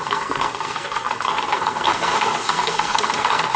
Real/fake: fake